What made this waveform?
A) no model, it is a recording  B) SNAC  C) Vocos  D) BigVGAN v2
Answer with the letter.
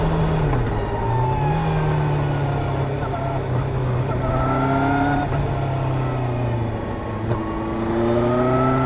A